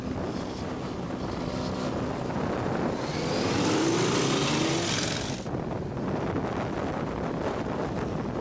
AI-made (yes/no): no